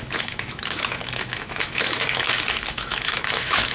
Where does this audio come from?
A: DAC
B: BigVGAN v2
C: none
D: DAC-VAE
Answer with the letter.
D